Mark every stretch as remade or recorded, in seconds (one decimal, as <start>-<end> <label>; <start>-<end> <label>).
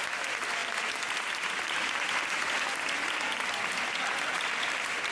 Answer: 0.0-5.1 recorded